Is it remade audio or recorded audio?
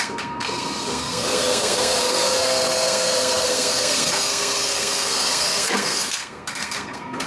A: remade